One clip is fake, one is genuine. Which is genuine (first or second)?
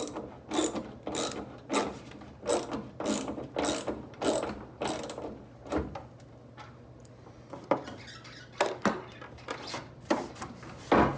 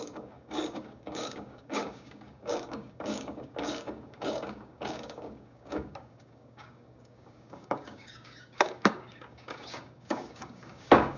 first